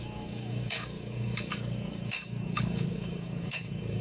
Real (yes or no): no